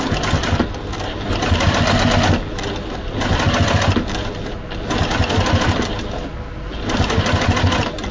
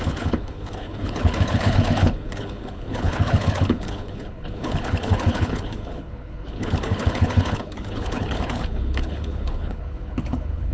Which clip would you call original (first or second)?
first